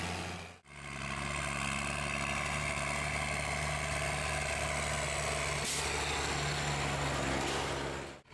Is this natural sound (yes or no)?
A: yes